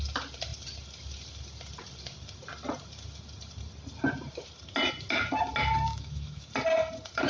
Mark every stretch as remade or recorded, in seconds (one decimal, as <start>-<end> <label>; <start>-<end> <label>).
0.0-5.9 recorded; 5.9-6.5 remade; 6.5-7.3 recorded